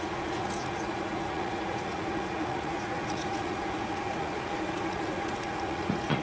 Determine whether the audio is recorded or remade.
remade